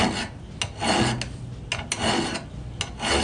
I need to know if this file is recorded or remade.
recorded